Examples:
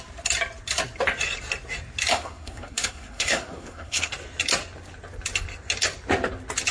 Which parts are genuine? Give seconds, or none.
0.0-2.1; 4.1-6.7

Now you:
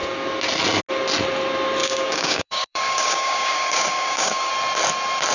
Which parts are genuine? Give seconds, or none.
0.0-1.8; 4.5-5.3

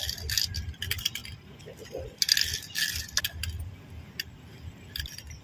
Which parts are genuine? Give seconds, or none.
0.0-5.4

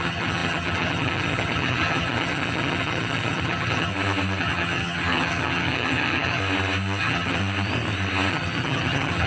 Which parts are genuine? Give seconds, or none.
3.9-4.4; 6.4-7.0; 7.4-8.3

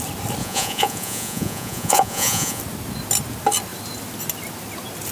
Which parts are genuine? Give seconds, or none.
0.0-0.4; 2.6-5.1

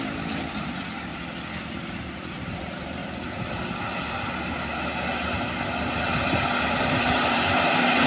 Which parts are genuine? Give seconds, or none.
1.1-1.9; 3.0-6.7